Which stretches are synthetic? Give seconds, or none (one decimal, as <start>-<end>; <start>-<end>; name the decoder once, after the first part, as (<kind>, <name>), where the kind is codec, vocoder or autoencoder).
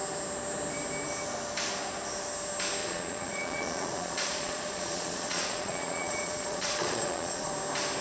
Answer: 2.8-7.5 (vocoder, Vocos)